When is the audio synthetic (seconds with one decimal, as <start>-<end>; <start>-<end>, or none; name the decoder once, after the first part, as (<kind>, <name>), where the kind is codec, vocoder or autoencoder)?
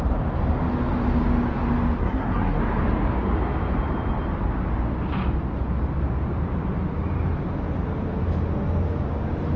2.0-2.6 (codec, SNAC)